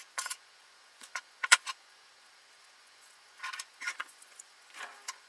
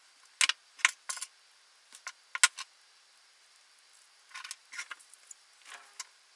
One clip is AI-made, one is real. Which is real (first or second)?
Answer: second